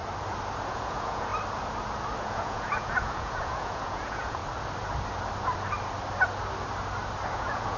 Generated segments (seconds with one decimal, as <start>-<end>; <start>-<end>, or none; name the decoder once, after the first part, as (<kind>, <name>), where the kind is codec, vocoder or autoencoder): 0.7-1.3 (vocoder, Vocos); 2.2-4.4; 7.3-7.8